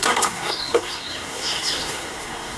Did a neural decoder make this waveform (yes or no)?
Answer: yes